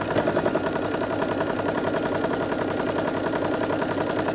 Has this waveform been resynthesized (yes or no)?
no